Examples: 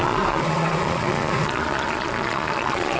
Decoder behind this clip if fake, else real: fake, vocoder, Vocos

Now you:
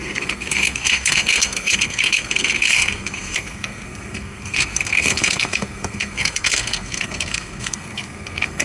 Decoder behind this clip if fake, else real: fake, codec, SNAC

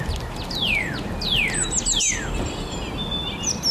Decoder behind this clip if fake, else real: real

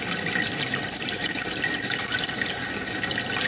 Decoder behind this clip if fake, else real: real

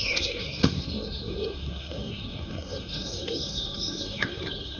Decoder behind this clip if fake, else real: fake, codec, SNAC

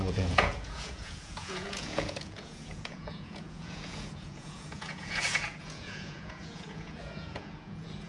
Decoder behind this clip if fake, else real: fake, vocoder, Vocos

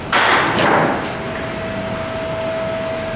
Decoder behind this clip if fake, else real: real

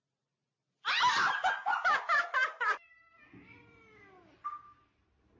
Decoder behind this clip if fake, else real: real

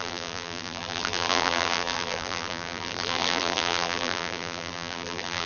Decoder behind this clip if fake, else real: fake, vocoder, BigVGAN v2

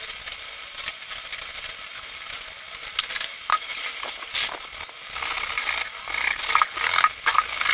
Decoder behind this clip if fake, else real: real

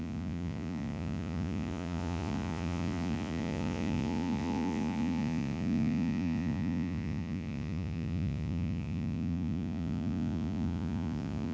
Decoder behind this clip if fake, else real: fake, vocoder, Vocos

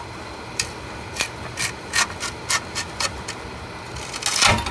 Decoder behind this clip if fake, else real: real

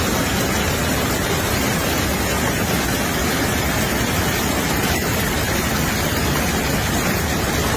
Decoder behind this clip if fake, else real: real